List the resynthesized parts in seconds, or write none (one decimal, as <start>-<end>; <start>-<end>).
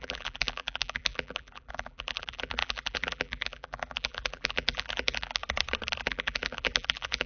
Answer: 0.0-5.4; 6.0-7.3